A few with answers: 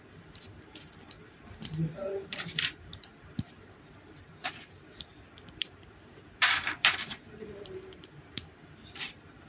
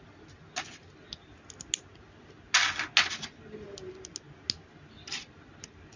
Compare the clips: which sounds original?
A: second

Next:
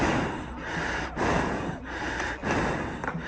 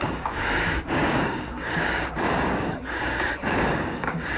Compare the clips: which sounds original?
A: first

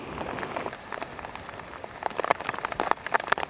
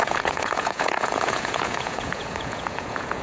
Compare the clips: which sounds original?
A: first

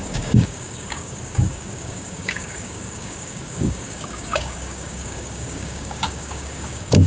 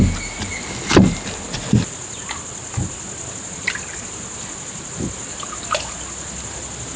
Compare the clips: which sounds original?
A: second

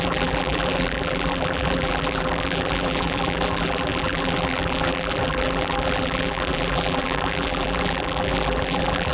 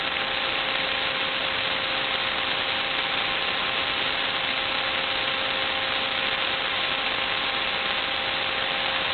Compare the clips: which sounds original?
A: second